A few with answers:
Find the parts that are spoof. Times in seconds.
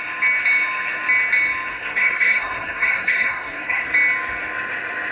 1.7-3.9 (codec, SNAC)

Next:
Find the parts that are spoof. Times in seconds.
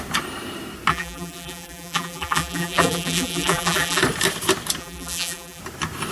0.9-4.0 (vocoder, BigVGAN v2); 4.8-5.6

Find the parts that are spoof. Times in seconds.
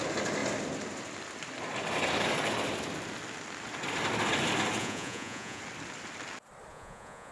4.8-5.6 (vocoder, Vocos); 6.7-7.3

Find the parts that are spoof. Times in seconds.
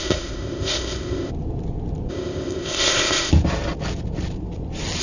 0.0-1.3 (codec, ZipCodec); 2.1-3.3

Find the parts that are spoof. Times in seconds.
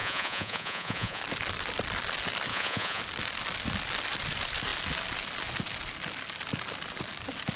0.0-1.2 (vocoder, Vocos); 2.5-3.0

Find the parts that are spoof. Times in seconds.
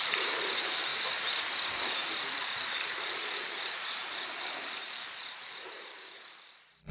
0.0-0.9 (vocoder, BigVGAN v2); 1.8-6.9